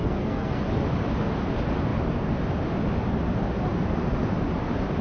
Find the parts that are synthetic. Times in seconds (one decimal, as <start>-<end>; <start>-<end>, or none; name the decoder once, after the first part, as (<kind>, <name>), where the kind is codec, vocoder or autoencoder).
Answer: 0.0-0.6 (codec, SNAC)